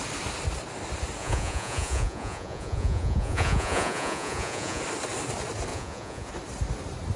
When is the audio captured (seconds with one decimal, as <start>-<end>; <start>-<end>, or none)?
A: 0.0-1.2; 4.8-5.7; 6.3-7.2